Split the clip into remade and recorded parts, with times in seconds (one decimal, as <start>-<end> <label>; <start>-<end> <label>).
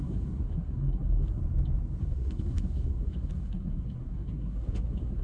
0.0-1.4 remade; 1.4-2.0 recorded; 2.0-5.2 remade